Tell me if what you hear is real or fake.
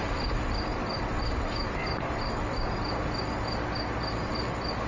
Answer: real